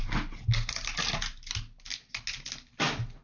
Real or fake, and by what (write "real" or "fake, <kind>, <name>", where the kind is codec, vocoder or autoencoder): real